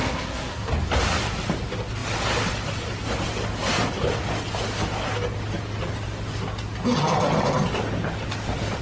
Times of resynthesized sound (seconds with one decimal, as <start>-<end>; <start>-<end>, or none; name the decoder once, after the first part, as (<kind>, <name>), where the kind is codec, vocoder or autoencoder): 0.0-0.7 (codec, SNAC)